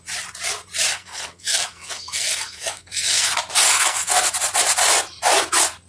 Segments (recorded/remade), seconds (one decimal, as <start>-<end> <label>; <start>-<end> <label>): 0.0-0.9 recorded; 0.9-3.3 remade; 3.3-3.7 recorded; 3.7-4.3 remade; 4.3-5.9 recorded